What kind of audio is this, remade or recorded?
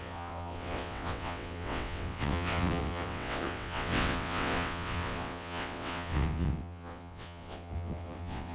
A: remade